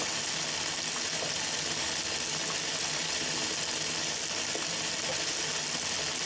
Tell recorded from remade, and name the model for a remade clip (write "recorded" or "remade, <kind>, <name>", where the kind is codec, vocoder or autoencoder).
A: recorded